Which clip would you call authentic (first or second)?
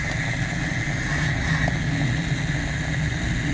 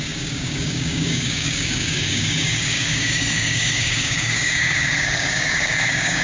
first